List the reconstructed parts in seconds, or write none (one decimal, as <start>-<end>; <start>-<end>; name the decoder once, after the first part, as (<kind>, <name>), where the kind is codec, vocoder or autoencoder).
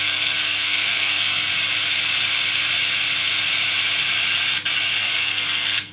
0.0-1.5 (codec, SNAC); 5.0-5.9